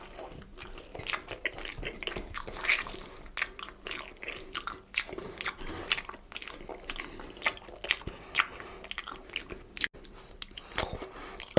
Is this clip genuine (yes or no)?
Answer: yes